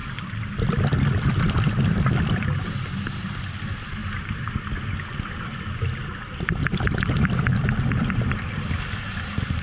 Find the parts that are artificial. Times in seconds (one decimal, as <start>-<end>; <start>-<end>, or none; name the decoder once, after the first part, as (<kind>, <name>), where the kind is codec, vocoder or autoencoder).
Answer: none